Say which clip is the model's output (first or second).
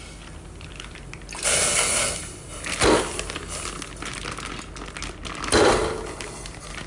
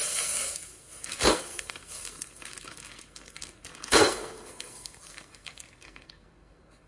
second